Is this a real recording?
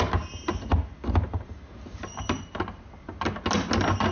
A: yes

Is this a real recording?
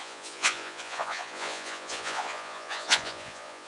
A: no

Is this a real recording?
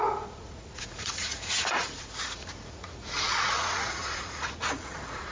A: no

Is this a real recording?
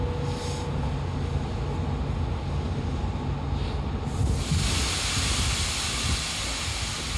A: yes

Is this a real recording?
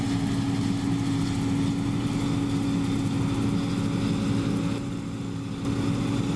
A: yes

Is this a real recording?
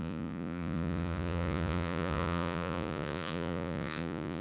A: no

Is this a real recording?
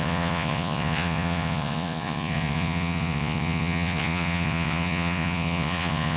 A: no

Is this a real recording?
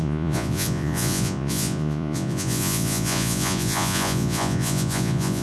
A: no